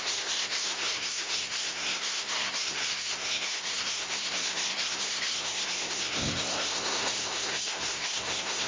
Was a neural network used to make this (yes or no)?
yes